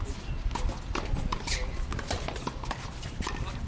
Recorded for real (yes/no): yes